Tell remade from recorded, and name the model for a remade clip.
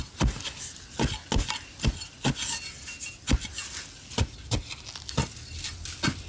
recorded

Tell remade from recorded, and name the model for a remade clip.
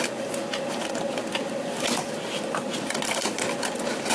recorded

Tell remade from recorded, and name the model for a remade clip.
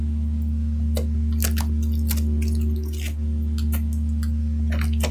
recorded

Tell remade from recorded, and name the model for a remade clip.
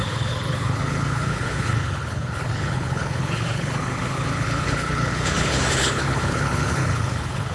remade, codec, HILCodec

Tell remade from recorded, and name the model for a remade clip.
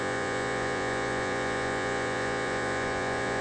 remade, vocoder, Vocos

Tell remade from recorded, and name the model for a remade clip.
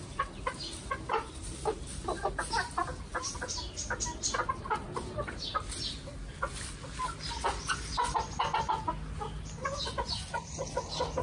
recorded